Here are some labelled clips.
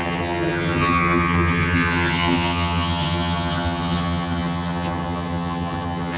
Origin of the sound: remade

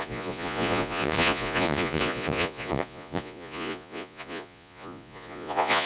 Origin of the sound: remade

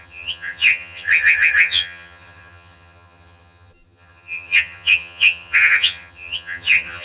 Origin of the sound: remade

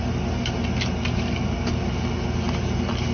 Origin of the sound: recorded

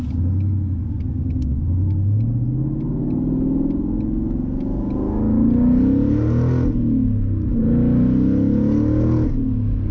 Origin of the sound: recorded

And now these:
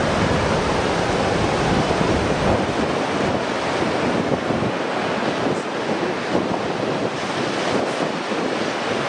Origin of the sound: recorded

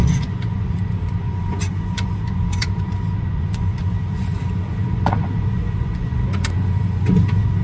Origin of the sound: remade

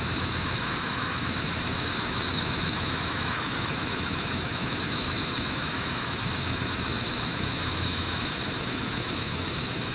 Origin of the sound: remade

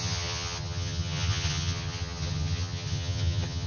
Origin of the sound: remade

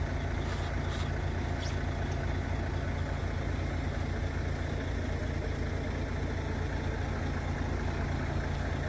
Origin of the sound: recorded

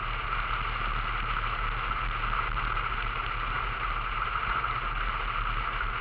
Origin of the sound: recorded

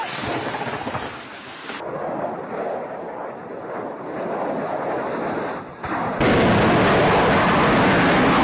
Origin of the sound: recorded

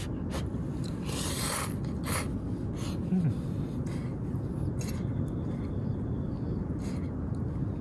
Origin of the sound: recorded